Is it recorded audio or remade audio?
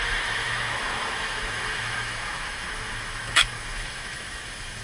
remade